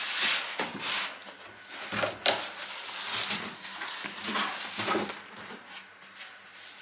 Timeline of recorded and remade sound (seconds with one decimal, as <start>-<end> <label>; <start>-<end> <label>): 0.0-6.8 recorded